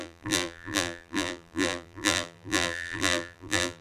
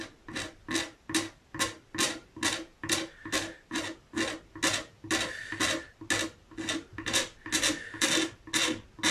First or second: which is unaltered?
second